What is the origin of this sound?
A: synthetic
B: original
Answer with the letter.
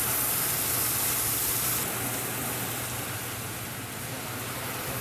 B